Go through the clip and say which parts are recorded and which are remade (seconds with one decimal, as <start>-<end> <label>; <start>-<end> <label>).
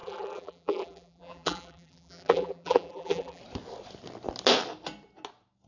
0.0-3.4 remade; 3.4-5.7 recorded